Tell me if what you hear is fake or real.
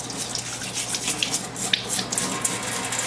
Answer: real